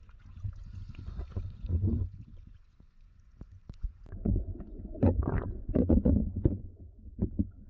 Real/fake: fake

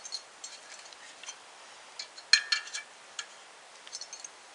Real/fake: real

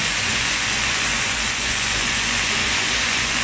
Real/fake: fake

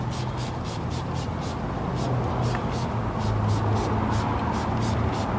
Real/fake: real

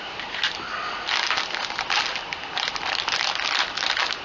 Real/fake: real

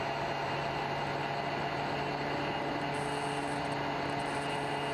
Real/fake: real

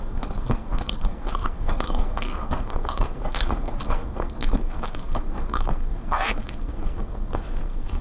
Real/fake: fake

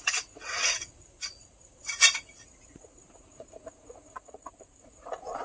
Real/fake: fake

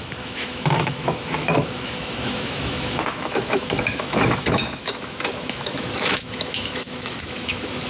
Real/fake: fake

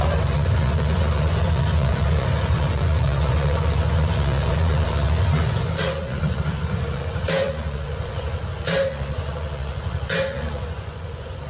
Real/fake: fake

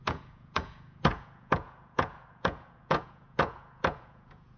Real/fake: fake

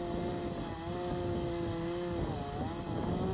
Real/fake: real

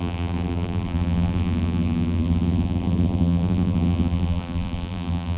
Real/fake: fake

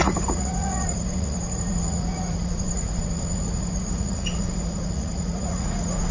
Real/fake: fake